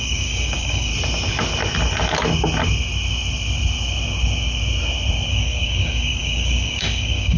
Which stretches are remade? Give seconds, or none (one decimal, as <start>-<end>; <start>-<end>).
0.0-0.9; 5.3-7.4